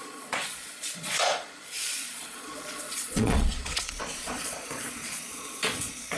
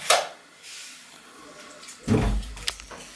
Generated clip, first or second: first